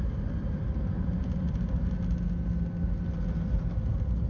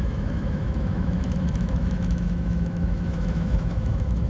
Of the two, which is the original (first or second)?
first